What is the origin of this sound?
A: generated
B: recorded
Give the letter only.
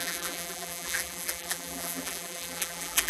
A